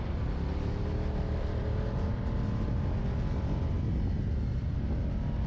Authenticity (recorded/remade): recorded